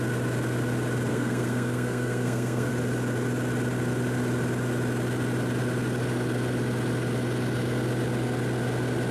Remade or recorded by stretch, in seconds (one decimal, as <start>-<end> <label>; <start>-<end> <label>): 0.0-1.1 recorded; 1.1-2.7 remade; 2.7-9.1 recorded